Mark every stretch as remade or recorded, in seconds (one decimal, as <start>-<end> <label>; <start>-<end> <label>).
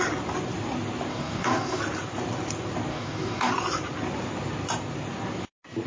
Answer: 0.0-1.1 recorded; 1.1-1.8 remade; 1.8-2.9 recorded; 2.9-3.5 remade; 3.5-5.9 recorded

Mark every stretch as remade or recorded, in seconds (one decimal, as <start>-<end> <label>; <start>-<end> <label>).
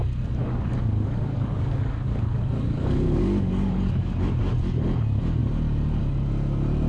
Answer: 0.0-0.4 recorded; 0.4-4.1 remade; 4.1-6.9 recorded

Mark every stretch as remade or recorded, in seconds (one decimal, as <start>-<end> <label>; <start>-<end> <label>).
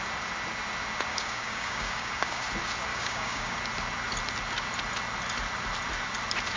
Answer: 0.0-1.1 recorded; 1.1-2.4 remade; 2.4-2.9 recorded; 2.9-3.6 remade; 3.6-6.6 recorded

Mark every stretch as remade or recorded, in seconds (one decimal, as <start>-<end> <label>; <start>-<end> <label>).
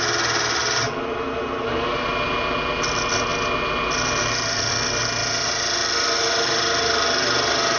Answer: 0.0-7.8 recorded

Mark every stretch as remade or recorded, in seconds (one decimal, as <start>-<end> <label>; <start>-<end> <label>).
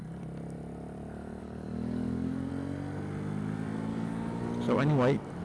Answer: 0.0-1.4 recorded; 1.4-2.5 remade; 2.5-3.9 recorded; 3.9-4.4 remade; 4.4-5.4 recorded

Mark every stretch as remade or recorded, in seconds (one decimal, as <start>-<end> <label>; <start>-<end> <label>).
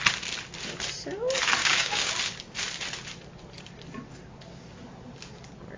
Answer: 0.0-1.6 recorded; 1.6-2.1 remade; 2.1-5.8 recorded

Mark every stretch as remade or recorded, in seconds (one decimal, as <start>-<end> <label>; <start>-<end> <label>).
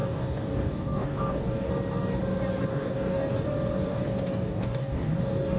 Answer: 0.0-1.7 remade; 1.7-2.7 recorded; 2.7-3.3 remade; 3.3-3.9 recorded; 3.9-5.6 remade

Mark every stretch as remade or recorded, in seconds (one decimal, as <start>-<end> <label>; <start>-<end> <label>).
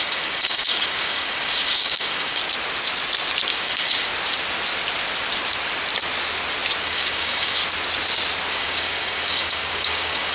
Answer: 0.0-2.4 remade; 2.4-3.5 recorded; 3.5-4.1 remade; 4.1-6.8 recorded; 6.8-7.6 remade; 7.6-8.5 recorded; 8.5-10.3 remade